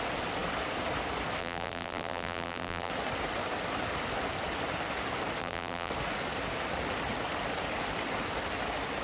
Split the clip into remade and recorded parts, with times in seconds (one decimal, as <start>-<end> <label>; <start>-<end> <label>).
0.0-1.4 recorded; 1.4-2.9 remade; 2.9-5.4 recorded; 5.4-5.9 remade; 5.9-9.0 recorded